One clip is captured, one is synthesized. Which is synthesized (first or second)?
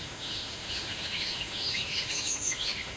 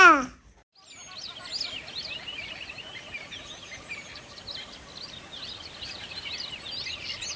first